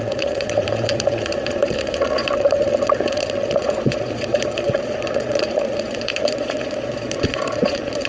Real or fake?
fake